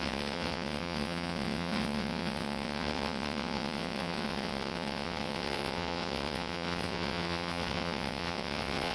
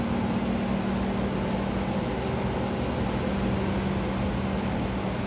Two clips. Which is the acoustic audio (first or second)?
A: second